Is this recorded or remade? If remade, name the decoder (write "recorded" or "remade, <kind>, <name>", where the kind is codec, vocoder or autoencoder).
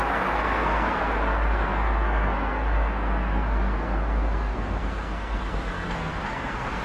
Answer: remade, codec, SNAC